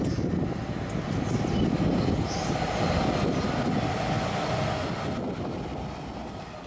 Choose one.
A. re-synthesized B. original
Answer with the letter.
B